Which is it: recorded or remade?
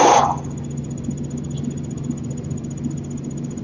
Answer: recorded